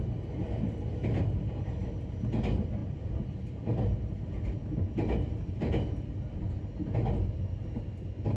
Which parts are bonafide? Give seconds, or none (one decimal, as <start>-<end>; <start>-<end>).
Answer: 0.0-8.4